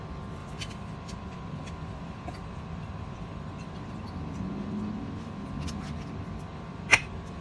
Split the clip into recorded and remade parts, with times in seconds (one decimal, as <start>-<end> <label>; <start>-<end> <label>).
0.0-0.4 recorded; 0.4-3.7 remade; 3.7-6.5 recorded; 6.5-7.4 remade